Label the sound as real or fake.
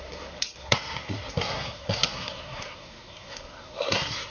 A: fake